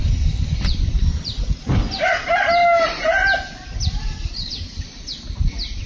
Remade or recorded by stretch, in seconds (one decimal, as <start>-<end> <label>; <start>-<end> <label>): 0.0-1.1 remade; 1.1-5.9 recorded